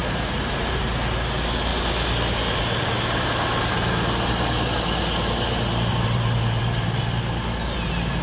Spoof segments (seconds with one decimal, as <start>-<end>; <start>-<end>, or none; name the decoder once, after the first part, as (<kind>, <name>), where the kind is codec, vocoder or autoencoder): 0.0-0.7 (vocoder, BigVGAN v2); 5.9-7.0